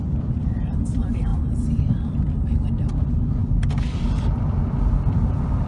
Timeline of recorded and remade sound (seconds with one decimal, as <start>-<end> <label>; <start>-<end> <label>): 0.0-1.3 remade; 1.3-2.2 recorded; 2.2-5.7 remade